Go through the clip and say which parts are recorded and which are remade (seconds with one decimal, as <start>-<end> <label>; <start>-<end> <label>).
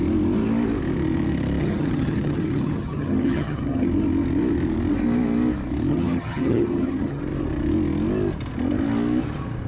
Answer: 0.0-1.6 recorded; 1.6-3.9 remade; 3.9-5.9 recorded; 5.9-7.2 remade; 7.2-9.7 recorded